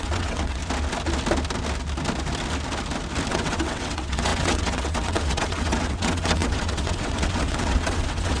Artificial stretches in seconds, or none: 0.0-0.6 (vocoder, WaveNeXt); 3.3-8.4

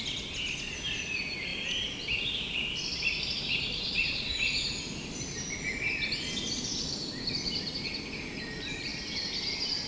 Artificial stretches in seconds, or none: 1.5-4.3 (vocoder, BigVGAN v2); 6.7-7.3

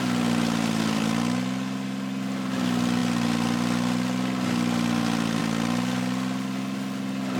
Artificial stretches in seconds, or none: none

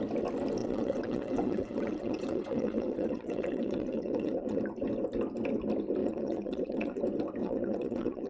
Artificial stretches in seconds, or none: 0.6-4.6 (vocoder, WaveNeXt); 6.0-7.0; 7.4-8.3

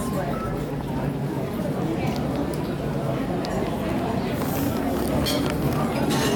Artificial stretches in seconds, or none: 0.0-0.9 (vocoder, BigVGAN v2)

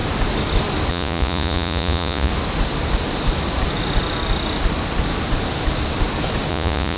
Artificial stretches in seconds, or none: 0.9-2.3 (vocoder, Vocos); 6.5-7.0